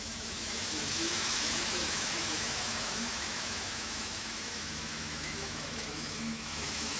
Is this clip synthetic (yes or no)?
yes